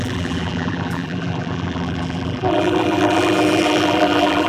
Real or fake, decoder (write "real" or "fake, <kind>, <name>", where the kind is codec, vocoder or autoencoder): fake, vocoder, BigVGAN v2